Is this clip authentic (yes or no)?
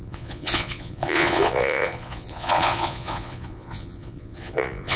no